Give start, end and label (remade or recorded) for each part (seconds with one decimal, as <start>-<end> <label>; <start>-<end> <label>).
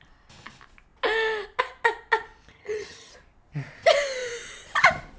0.0-2.5 recorded; 2.5-3.1 remade; 3.1-5.2 recorded